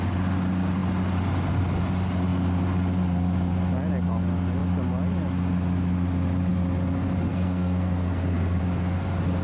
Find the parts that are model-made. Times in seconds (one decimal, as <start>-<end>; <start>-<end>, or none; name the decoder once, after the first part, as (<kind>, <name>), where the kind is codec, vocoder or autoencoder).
7.3-8.6 (codec, SNAC)